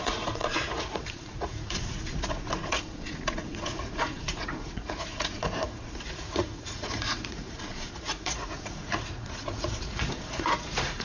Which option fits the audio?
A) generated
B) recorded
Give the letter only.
A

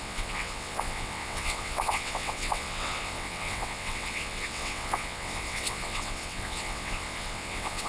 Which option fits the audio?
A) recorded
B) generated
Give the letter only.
B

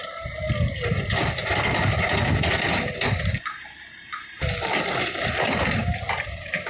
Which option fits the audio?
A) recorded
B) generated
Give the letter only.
A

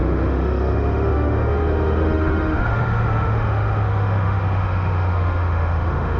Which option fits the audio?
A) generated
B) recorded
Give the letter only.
A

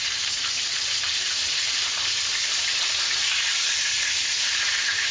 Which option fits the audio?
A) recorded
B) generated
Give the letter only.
B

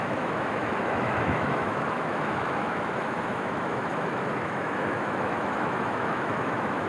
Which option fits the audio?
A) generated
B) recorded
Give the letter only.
A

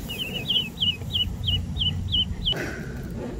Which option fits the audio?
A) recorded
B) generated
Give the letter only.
A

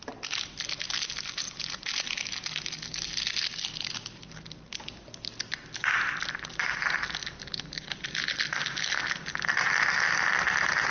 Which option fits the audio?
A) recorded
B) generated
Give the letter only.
A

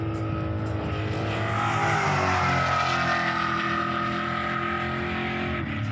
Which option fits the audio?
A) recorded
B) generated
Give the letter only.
A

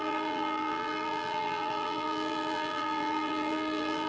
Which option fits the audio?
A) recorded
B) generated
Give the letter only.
B